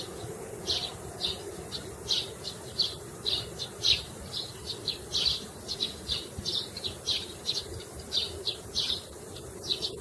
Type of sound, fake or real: real